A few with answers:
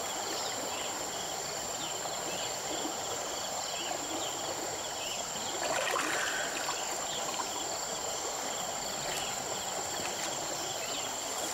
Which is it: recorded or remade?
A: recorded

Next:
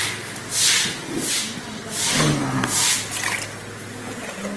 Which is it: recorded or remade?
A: recorded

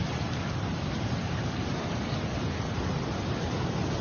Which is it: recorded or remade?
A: recorded